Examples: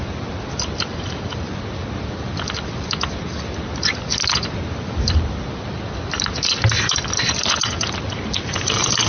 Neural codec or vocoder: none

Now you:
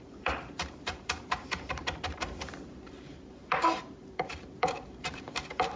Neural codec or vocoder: vocoder, BigVGAN v2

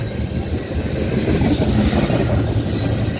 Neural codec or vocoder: none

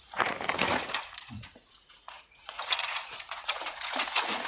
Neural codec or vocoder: vocoder, Vocos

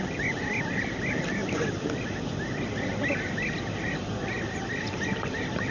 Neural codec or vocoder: none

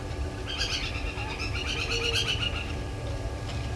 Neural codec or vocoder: vocoder, BigVGAN v2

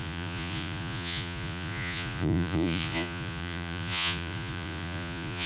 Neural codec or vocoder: vocoder, Vocos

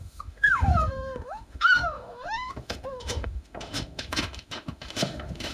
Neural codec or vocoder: autoencoder, DAC-VAE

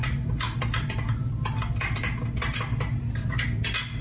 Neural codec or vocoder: none